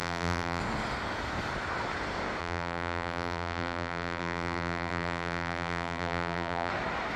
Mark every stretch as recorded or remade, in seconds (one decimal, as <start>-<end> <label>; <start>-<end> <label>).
0.0-0.6 remade; 0.6-2.4 recorded; 2.4-6.7 remade; 6.7-7.2 recorded